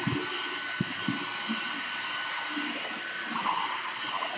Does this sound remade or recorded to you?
recorded